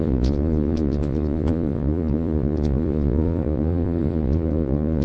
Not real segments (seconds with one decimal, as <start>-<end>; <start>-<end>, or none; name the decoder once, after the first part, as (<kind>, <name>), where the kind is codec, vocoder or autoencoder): 0.0-5.0 (vocoder, Vocos)